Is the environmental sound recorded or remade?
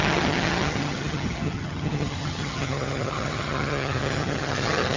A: remade